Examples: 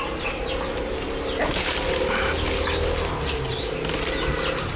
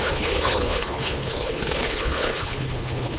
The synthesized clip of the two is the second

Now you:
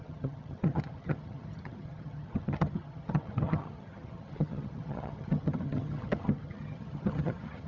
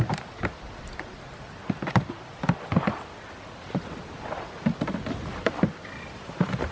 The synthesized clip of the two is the first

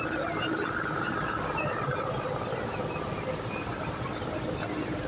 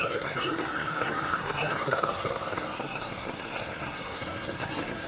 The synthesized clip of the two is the second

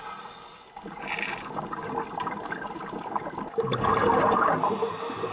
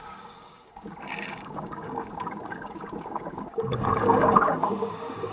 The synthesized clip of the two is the second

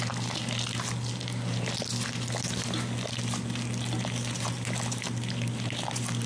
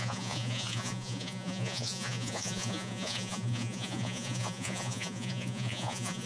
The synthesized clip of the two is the second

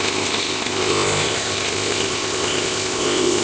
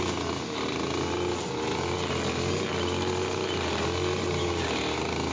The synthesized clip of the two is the first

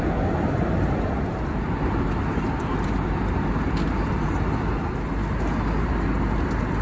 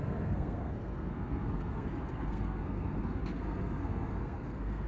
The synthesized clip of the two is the second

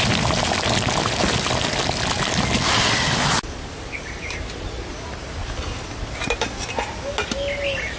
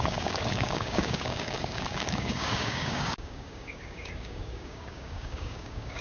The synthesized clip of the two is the second